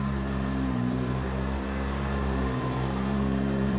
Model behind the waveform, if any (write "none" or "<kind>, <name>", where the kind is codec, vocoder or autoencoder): vocoder, BigVGAN v2